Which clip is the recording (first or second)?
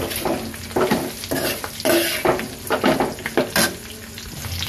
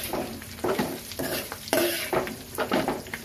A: first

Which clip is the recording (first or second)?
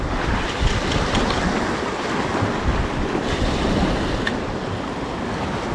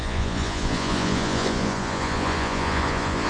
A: first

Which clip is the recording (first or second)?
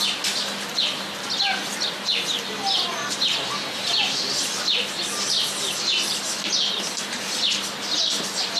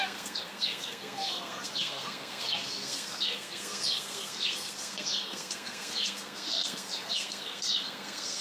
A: first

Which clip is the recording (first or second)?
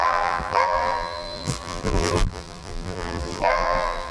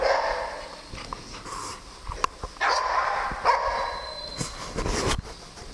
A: second